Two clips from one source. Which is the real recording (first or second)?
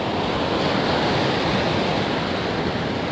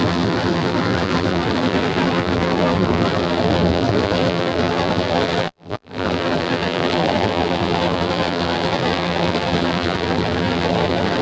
first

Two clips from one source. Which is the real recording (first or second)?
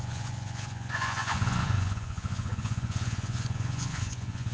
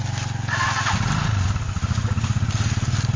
second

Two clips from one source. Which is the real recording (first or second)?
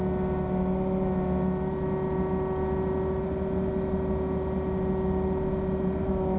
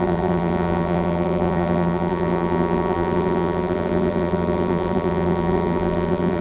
first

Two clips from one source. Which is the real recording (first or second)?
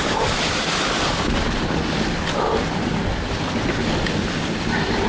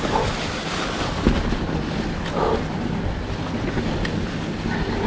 second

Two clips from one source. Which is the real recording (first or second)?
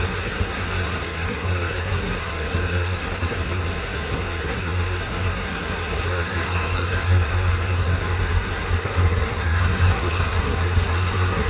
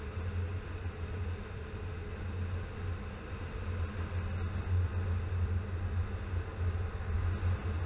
second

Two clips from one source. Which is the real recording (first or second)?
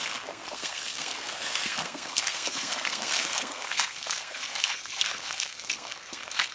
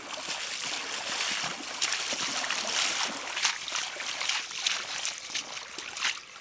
second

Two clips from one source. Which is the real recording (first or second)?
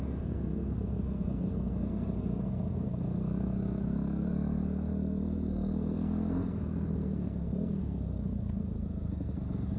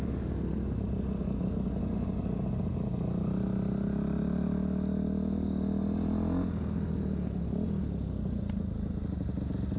second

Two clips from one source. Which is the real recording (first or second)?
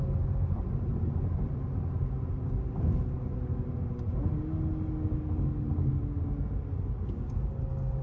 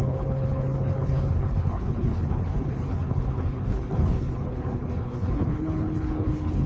first